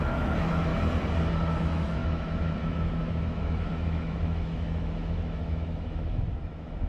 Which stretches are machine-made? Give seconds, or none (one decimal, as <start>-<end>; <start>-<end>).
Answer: 0.0-0.7; 1.6-6.9